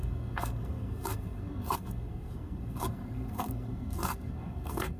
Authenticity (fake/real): fake